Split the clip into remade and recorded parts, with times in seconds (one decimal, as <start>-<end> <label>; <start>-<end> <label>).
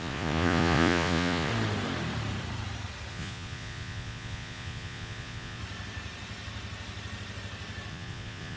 0.0-1.5 remade; 1.5-3.1 recorded; 3.1-5.6 remade; 5.6-7.9 recorded; 7.9-8.6 remade